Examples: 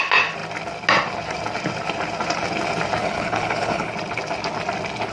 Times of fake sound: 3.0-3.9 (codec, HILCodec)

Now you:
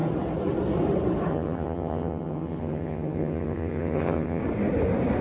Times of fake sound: 1.3-4.4 (vocoder, HiFi-GAN)

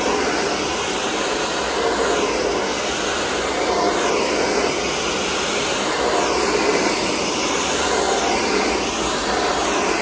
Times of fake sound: none

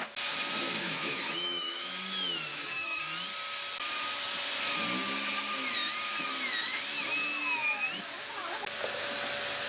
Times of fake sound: 0.8-1.9 (autoencoder, DAC-VAE); 2.5-3.0

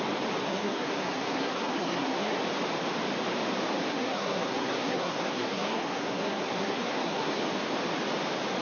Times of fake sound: 0.4-2.4 (codec, SNAC); 3.9-7.4

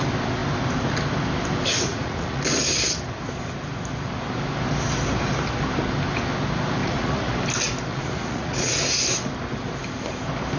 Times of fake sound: 1.9-2.4 (vocoder, Vocos); 6.8-7.3; 7.9-8.7

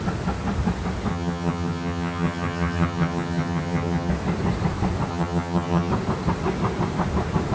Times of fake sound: 1.1-4.1 (vocoder, HiFi-GAN); 5.1-5.9

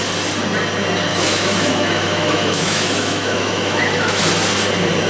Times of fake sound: 1.1-4.2 (autoencoder, DAC-VAE)